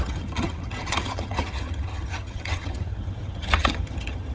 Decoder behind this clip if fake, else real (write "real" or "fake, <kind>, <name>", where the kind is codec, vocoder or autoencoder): fake, vocoder, HiFi-GAN